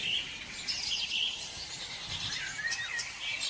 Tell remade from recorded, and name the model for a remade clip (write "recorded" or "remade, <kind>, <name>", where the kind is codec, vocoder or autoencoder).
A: recorded